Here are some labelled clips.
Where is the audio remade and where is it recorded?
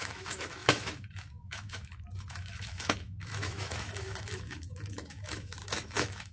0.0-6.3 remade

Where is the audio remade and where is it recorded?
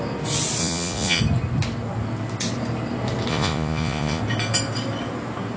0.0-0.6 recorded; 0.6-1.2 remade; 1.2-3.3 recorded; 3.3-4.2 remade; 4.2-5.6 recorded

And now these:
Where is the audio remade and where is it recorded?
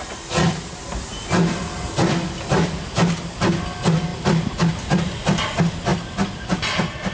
0.0-7.1 recorded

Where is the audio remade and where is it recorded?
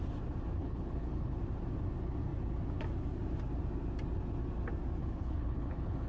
0.0-0.6 recorded; 0.6-1.4 remade; 1.4-5.0 recorded; 5.0-6.1 remade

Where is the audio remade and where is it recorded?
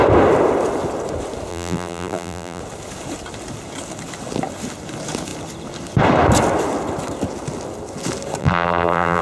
0.0-1.5 recorded; 1.5-2.6 remade; 2.6-8.4 recorded; 8.4-9.2 remade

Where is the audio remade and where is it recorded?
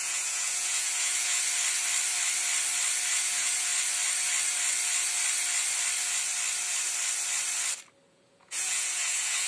0.0-1.4 remade; 1.4-3.1 recorded; 3.1-3.7 remade; 3.7-8.1 recorded; 8.1-9.5 remade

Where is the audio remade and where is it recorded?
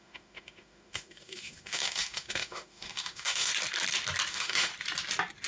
0.0-3.5 remade; 3.5-4.3 recorded; 4.3-4.7 remade; 4.7-5.5 recorded